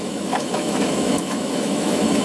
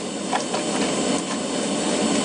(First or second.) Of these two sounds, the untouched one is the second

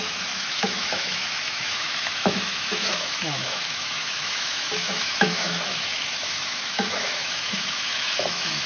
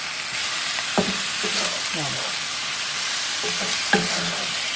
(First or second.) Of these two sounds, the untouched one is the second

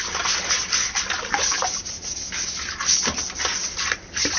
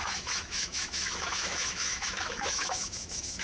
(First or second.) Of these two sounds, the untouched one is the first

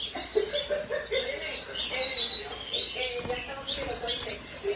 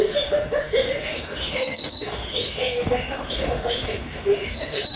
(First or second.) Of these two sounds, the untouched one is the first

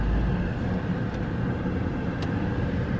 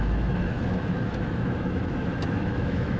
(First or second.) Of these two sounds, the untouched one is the first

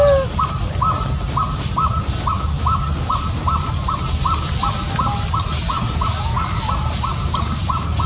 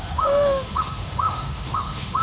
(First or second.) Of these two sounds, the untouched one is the first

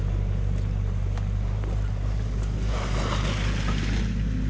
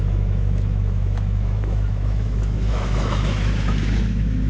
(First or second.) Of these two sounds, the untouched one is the first